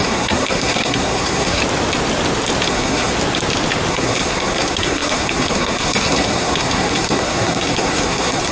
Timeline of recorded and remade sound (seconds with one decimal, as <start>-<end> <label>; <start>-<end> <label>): 0.0-1.6 remade; 1.6-2.7 recorded; 2.7-3.1 remade; 3.1-3.9 recorded; 3.9-8.5 remade